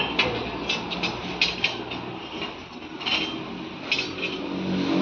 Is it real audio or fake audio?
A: real